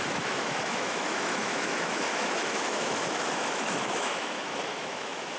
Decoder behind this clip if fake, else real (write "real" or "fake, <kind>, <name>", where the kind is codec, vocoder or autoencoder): fake, autoencoder, DAC-VAE